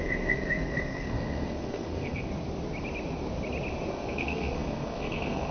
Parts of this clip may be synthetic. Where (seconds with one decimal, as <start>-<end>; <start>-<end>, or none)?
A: 0.0-2.3; 3.9-5.5